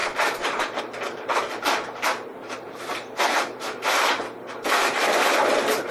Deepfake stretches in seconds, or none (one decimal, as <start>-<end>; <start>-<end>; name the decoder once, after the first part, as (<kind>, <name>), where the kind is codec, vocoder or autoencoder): 0.0-0.8 (vocoder, BigVGAN v2); 2.3-3.9; 4.8-5.9